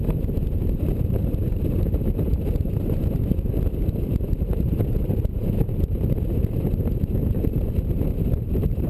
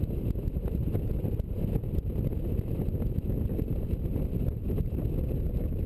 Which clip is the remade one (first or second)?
first